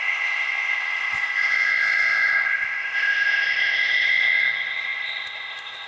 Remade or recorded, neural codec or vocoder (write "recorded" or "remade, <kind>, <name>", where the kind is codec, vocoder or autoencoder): remade, codec, ZipCodec